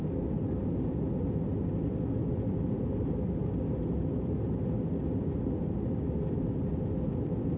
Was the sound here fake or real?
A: real